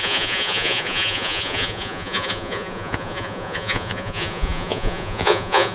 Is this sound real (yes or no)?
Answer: no